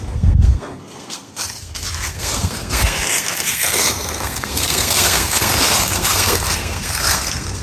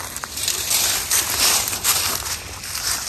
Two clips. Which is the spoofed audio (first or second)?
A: first